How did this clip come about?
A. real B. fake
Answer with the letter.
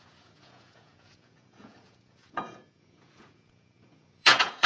B